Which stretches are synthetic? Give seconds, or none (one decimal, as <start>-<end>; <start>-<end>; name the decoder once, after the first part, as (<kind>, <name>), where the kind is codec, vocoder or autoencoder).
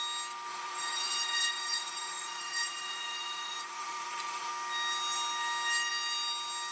0.5-4.5 (vocoder, Vocos)